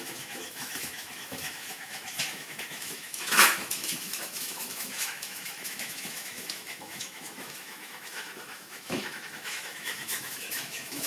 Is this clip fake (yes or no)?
yes